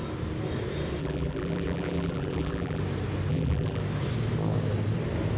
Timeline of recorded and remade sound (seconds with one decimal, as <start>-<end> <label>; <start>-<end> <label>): 0.0-1.0 recorded; 1.0-2.8 remade; 2.8-3.3 recorded; 3.3-3.8 remade; 3.8-5.4 recorded